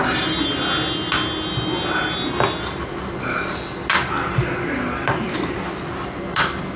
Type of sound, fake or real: real